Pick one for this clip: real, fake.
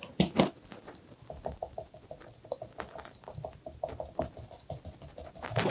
real